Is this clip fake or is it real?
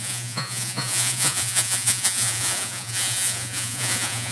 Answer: fake